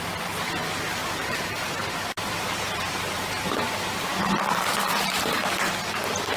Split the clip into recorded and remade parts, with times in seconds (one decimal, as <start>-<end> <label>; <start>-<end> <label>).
0.0-1.0 recorded; 1.0-3.4 remade; 3.4-6.4 recorded